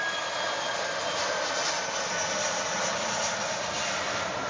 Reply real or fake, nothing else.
real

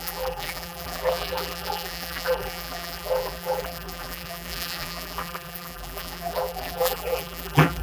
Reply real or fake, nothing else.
fake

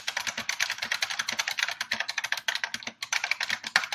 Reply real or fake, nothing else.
real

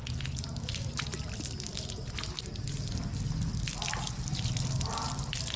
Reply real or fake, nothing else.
real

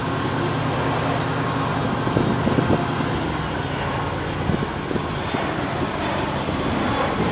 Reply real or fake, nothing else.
real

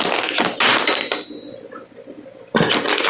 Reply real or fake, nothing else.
real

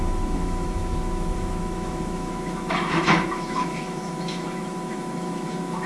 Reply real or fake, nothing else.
fake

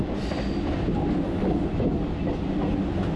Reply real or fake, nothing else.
real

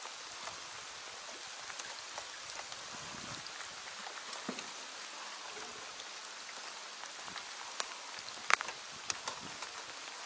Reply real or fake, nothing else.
real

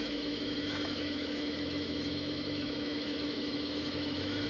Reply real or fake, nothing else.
fake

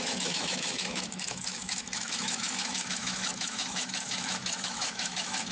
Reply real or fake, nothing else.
fake